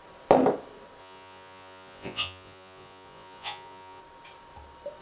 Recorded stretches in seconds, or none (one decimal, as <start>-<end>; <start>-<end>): 0.0-1.0; 4.0-5.0